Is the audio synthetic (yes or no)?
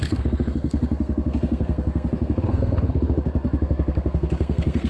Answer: yes